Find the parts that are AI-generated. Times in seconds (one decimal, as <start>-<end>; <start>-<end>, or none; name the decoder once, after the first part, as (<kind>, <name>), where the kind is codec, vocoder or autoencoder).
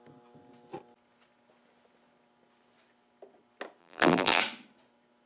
3.8-4.4 (vocoder, BigVGAN v2)